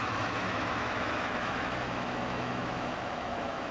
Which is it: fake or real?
fake